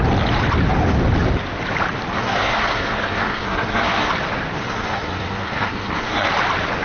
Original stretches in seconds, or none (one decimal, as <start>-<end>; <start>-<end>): 0.0-2.1; 4.1-4.6; 6.3-6.8